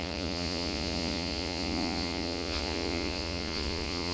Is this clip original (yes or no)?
no